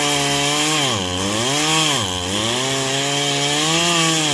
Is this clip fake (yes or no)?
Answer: no